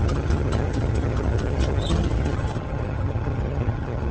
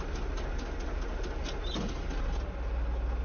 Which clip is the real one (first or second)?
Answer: second